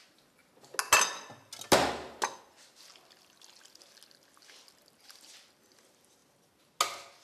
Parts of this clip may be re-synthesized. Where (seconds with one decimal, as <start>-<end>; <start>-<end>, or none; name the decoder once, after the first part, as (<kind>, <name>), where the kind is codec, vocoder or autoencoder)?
none